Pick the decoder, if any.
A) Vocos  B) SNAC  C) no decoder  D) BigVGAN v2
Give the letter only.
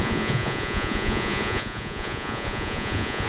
A